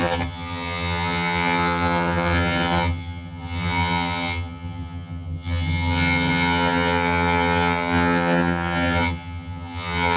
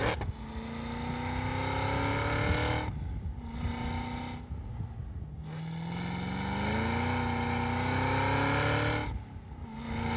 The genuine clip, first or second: second